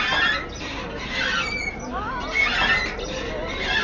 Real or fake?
real